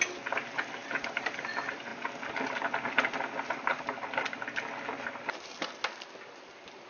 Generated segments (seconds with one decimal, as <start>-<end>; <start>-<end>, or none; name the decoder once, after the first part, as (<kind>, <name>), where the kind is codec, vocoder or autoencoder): 0.8-1.5 (vocoder, BigVGAN v2)